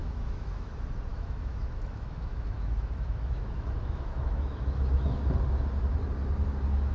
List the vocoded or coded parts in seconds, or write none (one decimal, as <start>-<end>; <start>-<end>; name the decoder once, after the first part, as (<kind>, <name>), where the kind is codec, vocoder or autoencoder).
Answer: 0.0-0.7 (autoencoder, DAC-VAE); 1.1-5.2